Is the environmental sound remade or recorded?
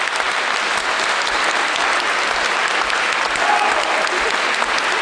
recorded